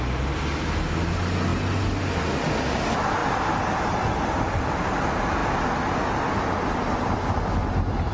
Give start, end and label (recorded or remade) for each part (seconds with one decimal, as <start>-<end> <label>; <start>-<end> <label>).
0.0-8.1 recorded

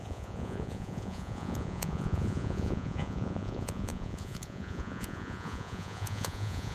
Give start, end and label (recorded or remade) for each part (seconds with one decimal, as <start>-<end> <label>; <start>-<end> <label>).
0.0-6.7 remade

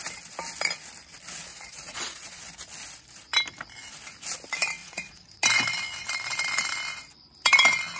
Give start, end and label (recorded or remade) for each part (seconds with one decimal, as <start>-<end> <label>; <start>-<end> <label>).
0.0-1.5 recorded; 1.5-2.4 remade; 2.4-4.8 recorded; 4.8-5.4 remade; 5.4-8.0 recorded

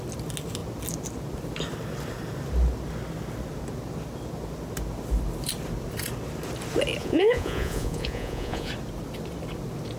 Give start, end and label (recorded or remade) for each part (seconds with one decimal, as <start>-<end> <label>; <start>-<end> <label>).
0.0-7.0 recorded; 7.0-8.7 remade; 8.7-10.0 recorded